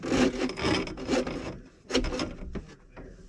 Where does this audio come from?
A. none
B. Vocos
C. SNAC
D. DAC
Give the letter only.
A